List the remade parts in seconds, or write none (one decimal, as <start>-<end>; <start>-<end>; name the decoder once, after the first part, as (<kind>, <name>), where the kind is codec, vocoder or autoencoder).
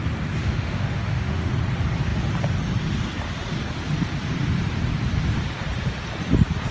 0.4-1.5 (autoencoder, DAC-VAE)